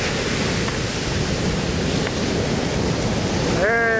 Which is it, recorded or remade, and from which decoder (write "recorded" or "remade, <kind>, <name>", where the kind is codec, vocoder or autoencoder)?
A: recorded